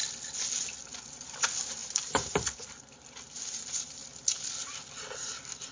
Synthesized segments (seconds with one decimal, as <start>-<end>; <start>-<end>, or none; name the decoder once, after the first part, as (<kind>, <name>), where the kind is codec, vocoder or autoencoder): 1.1-4.0 (vocoder, BigVGAN v2)